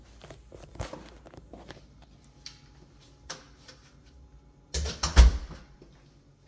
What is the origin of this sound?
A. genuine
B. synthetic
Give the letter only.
A